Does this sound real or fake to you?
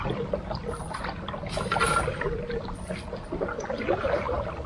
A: real